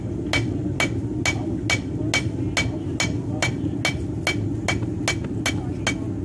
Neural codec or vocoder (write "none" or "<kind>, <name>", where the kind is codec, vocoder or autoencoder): none